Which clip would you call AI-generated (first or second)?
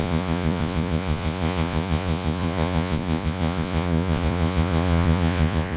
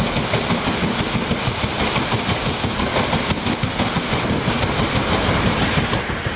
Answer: first